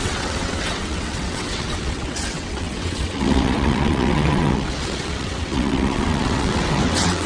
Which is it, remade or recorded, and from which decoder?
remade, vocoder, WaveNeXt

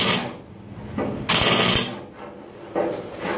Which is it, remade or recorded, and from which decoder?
recorded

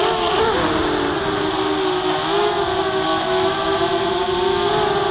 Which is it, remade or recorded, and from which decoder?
recorded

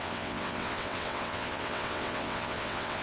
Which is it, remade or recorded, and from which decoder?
remade, vocoder, WaveNeXt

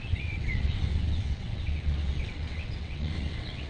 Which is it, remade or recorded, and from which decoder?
remade, vocoder, WaveNeXt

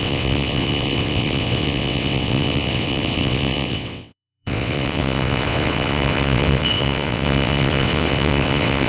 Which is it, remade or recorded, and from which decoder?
remade, vocoder, WaveNeXt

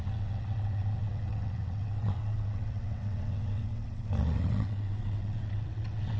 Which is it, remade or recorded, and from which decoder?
remade, vocoder, WaveNeXt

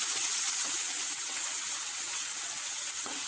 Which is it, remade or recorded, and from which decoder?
remade, vocoder, WaveNeXt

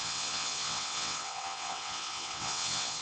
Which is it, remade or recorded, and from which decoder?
remade, vocoder, WaveNeXt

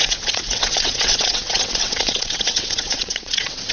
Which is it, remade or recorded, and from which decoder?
remade, vocoder, WaveNeXt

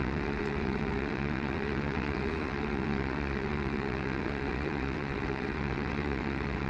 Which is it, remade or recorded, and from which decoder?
remade, vocoder, WaveNeXt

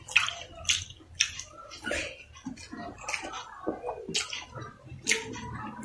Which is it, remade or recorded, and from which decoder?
recorded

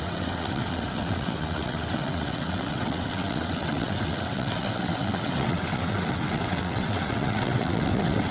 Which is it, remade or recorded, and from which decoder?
remade, vocoder, WaveNeXt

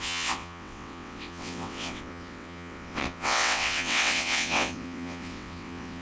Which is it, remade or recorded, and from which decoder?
remade, vocoder, WaveNeXt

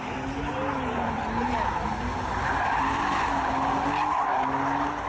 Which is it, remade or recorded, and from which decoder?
recorded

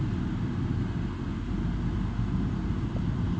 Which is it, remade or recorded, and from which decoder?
recorded